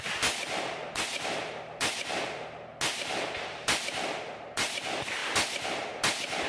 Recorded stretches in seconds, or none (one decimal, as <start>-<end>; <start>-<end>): 0.0-6.5